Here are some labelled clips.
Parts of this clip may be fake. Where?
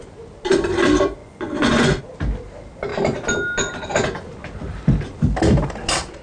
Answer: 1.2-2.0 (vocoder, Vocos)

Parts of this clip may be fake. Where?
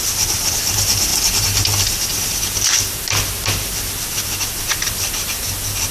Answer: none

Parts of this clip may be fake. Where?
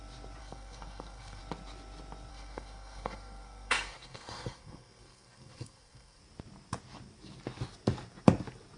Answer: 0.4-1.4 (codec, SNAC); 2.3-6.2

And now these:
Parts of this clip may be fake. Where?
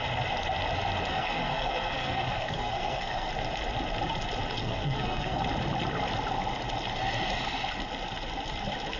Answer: 1.1-3.3 (codec, SNAC); 4.6-5.4